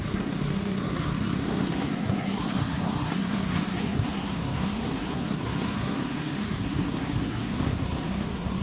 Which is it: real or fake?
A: fake